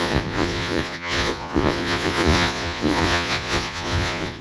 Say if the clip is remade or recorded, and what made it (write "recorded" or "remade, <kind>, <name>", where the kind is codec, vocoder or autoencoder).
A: remade, vocoder, Vocos